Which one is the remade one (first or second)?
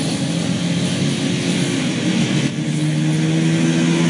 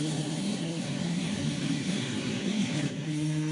second